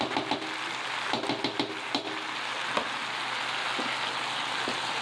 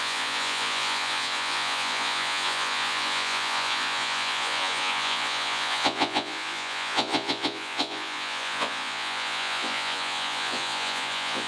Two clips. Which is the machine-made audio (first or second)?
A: second